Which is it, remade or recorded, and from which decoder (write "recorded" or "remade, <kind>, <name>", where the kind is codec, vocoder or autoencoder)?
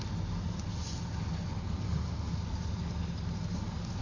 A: recorded